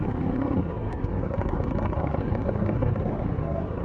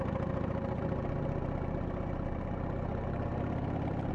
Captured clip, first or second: second